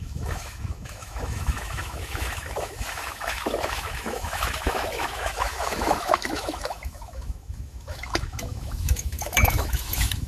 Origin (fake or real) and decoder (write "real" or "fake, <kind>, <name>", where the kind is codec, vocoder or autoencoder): fake, autoencoder, DAC-VAE